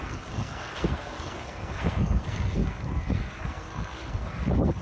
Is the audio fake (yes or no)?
yes